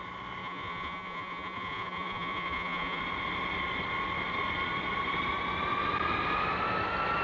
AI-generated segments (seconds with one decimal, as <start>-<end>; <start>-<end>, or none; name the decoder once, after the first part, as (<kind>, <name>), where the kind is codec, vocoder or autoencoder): 0.4-3.0 (vocoder, Vocos)